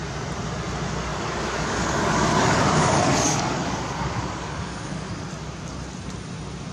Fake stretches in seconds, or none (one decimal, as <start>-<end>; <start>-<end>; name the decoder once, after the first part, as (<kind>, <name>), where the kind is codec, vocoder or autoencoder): 1.1-5.1 (codec, DAC)